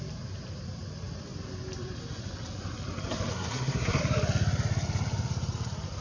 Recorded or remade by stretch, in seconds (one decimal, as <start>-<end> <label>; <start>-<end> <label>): 0.0-3.3 recorded; 3.3-4.0 remade; 4.0-6.0 recorded